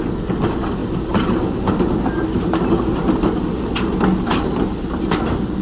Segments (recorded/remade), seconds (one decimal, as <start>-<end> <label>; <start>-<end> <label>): 0.0-5.6 recorded